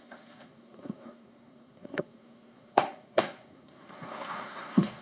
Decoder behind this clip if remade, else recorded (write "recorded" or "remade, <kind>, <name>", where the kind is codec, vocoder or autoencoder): remade, codec, SNAC